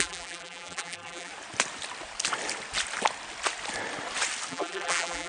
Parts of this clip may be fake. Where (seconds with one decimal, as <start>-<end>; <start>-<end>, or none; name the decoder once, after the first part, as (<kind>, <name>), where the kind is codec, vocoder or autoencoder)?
0.0-1.3 (vocoder, BigVGAN v2); 4.5-5.3